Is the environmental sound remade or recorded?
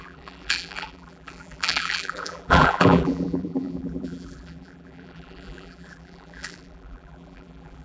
remade